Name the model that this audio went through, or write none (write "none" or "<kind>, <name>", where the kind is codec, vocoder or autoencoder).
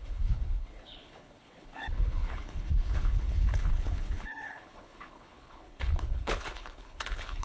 codec, HILCodec